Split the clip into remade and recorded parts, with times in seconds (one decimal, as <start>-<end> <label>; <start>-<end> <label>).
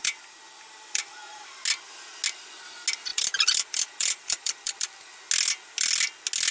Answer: 0.0-1.3 remade; 1.3-3.1 recorded; 3.1-5.3 remade; 5.3-6.5 recorded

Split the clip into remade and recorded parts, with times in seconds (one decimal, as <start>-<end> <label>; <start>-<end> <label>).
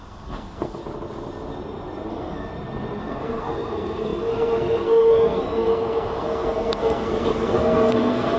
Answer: 0.0-0.8 remade; 0.8-2.1 recorded; 2.1-2.5 remade; 2.5-3.0 recorded; 3.0-8.4 remade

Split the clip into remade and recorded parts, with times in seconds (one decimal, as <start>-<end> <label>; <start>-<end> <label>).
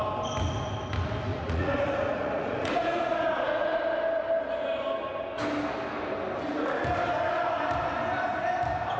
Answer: 0.0-1.3 recorded; 1.3-3.8 remade; 3.8-9.0 recorded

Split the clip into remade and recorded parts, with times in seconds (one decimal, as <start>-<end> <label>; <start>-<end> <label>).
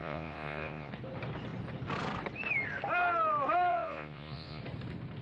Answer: 0.0-0.9 remade; 0.9-3.7 recorded; 3.7-4.6 remade; 4.6-5.2 recorded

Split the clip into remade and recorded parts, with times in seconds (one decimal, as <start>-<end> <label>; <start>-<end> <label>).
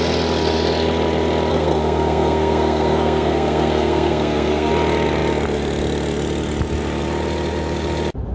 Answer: 0.0-1.5 recorded; 1.5-4.7 remade; 4.7-8.3 recorded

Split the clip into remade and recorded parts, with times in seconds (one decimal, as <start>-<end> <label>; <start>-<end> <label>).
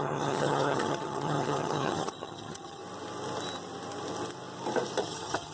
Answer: 0.0-2.8 remade; 2.8-5.0 recorded; 5.0-5.5 remade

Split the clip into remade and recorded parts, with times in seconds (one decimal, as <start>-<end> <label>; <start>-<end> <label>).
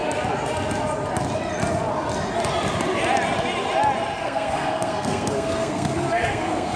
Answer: 0.0-4.2 recorded; 4.2-6.8 remade